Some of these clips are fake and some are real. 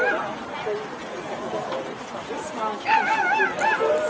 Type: real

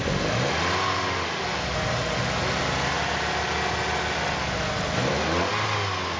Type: real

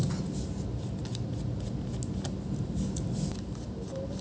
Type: real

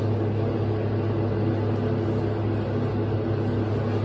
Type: real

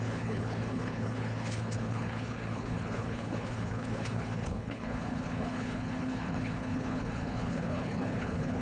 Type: fake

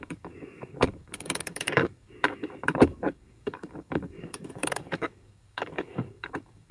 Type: fake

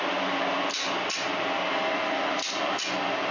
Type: real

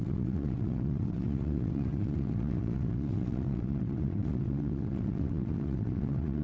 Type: fake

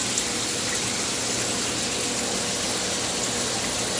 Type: real